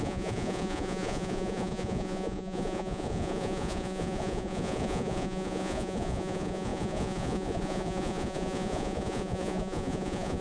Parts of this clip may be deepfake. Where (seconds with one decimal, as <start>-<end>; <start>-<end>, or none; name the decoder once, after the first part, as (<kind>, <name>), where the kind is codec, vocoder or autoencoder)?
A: 0.0-10.4 (vocoder, Vocos)